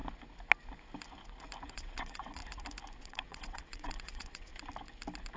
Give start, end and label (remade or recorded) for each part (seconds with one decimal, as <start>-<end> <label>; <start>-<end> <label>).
0.0-1.7 recorded; 1.7-2.4 remade; 2.4-3.0 recorded; 3.0-4.5 remade; 4.5-5.4 recorded